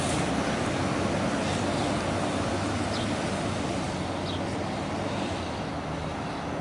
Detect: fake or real real